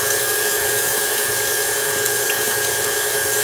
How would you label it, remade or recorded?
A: remade